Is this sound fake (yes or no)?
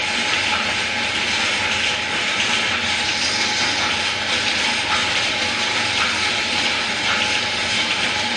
no